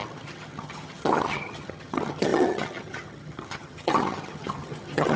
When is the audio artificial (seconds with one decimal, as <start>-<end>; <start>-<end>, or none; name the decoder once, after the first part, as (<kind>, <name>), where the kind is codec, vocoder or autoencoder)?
0.0-5.2 (vocoder, HiFi-GAN)